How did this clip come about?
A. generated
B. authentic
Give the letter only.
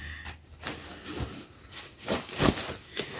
B